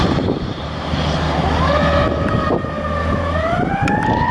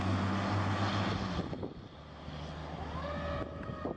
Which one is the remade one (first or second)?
first